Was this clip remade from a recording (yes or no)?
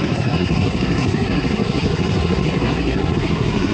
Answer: yes